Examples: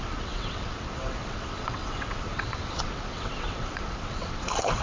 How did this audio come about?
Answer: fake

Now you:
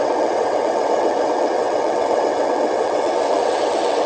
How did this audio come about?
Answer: fake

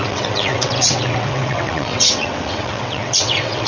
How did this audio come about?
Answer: fake